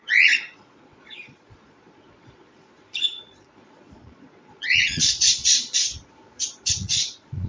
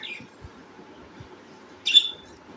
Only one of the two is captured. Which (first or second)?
second